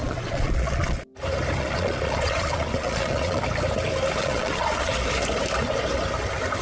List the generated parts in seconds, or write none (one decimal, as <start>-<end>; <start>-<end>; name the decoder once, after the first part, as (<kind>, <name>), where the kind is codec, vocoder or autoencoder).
0.0-1.0 (vocoder, Vocos); 1.6-3.4; 4.2-4.9